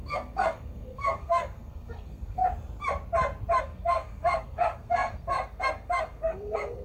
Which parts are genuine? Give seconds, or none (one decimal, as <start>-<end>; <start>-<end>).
2.4-3.6